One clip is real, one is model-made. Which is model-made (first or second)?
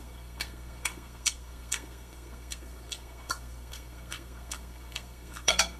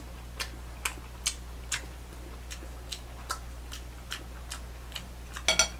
first